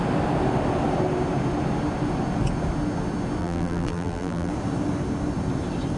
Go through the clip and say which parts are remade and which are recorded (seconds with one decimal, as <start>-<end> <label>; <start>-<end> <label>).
0.0-3.4 recorded; 3.4-4.5 remade; 4.5-6.0 recorded